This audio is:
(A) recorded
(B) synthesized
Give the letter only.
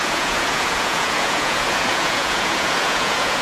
B